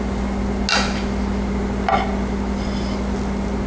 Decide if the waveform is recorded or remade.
recorded